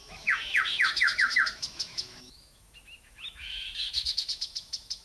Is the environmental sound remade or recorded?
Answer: remade